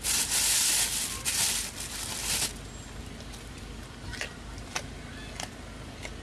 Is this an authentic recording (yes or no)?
yes